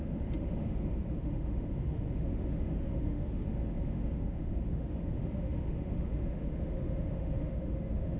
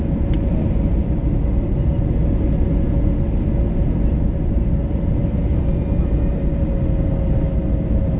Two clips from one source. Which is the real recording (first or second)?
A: second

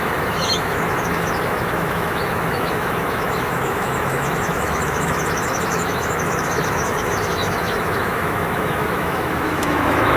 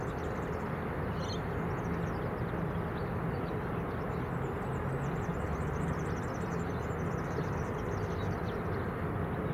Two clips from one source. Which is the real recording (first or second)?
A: second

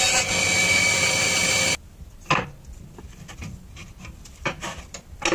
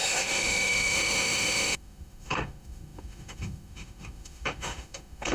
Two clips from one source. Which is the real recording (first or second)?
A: first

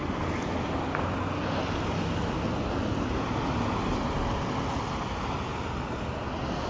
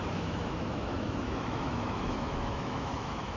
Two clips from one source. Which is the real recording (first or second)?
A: first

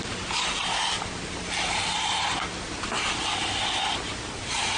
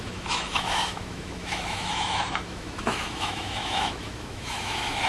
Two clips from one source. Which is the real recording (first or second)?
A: first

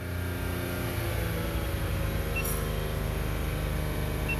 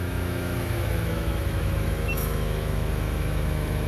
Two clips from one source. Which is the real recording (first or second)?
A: first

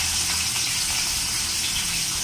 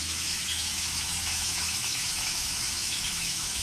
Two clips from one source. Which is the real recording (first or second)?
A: first